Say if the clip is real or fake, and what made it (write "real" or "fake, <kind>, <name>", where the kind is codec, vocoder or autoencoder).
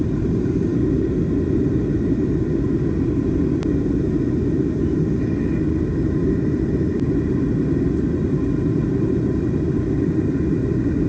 real